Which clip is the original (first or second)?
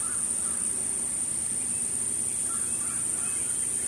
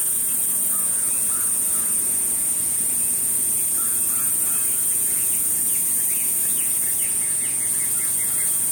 first